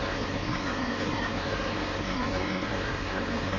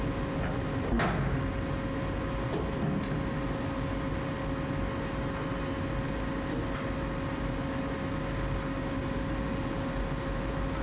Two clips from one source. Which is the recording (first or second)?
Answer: second